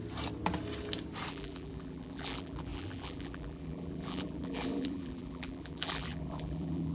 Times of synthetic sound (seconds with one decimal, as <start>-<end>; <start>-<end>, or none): 1.3-6.9